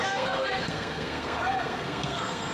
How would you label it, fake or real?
fake